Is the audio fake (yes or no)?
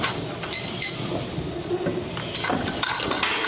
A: yes